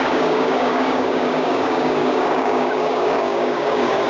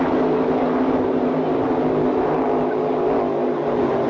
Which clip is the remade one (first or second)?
first